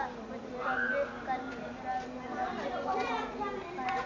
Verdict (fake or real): real